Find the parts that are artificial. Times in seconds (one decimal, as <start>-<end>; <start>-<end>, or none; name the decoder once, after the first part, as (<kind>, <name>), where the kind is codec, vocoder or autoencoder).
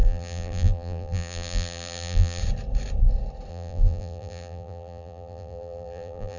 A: 0.0-2.4 (vocoder, BigVGAN v2); 3.5-6.4